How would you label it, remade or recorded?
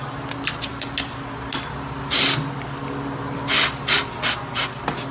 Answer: recorded